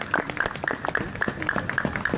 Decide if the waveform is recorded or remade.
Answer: recorded